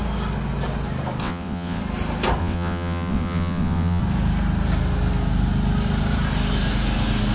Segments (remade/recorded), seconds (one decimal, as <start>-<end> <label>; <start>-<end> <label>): 0.0-1.2 recorded; 1.2-1.8 remade; 1.8-2.4 recorded; 2.4-4.0 remade; 4.0-7.3 recorded